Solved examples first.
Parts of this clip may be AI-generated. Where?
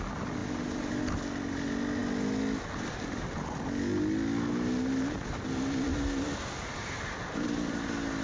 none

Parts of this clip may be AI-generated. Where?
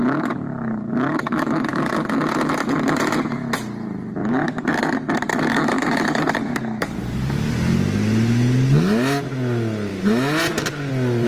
0.0-1.9 (codec, DAC); 4.2-7.5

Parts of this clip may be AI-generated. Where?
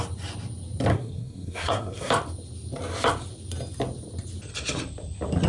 0.9-2.1 (codec, SNAC)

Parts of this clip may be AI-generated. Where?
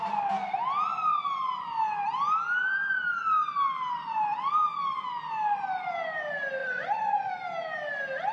6.6-7.3 (vocoder, Vocos)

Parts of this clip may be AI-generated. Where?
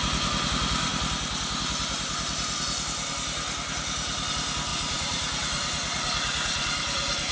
4.7-7.3 (vocoder, Vocos)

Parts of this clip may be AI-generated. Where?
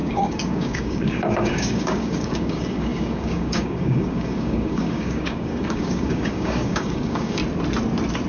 0.0-7.4 (codec, DAC)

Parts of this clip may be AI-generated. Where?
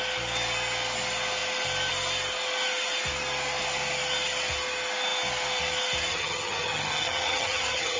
6.1-8.0 (vocoder, HiFi-GAN)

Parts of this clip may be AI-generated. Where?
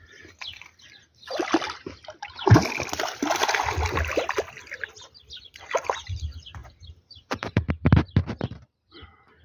6.6-7.7 (vocoder, BigVGAN v2)